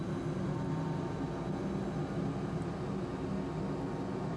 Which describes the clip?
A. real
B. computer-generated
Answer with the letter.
A